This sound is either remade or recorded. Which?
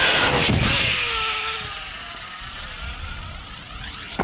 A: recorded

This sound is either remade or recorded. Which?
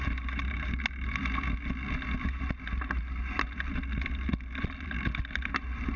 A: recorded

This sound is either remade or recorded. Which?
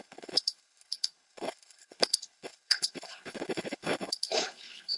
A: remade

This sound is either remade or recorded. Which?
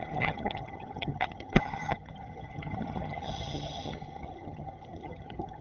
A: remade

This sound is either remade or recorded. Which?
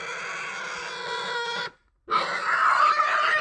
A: recorded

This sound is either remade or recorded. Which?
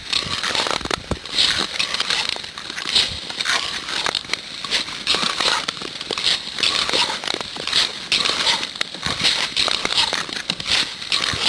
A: remade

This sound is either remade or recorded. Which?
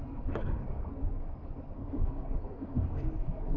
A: remade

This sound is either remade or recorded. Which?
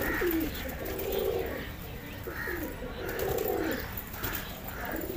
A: recorded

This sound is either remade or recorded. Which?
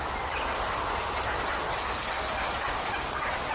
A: recorded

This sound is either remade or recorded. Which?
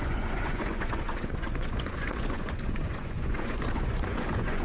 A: remade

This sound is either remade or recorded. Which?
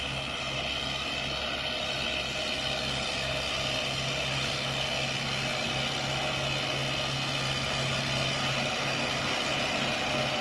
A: recorded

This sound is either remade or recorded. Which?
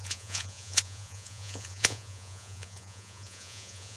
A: remade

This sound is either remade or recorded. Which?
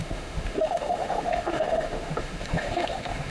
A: remade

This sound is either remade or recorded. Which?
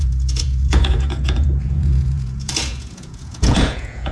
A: remade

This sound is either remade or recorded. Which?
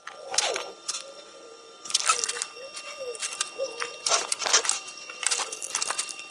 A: recorded